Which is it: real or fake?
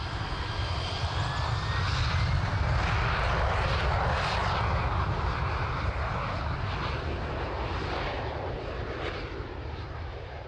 real